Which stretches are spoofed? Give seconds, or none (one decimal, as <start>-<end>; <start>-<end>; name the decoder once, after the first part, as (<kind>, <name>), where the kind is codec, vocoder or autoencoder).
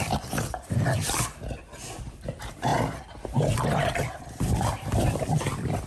0.0-2.7 (vocoder, BigVGAN v2); 3.8-5.9